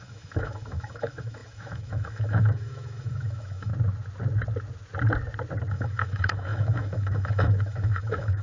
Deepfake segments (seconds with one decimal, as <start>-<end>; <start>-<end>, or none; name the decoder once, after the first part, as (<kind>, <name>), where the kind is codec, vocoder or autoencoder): 0.0-3.7 (autoencoder, DAC-VAE); 5.7-8.4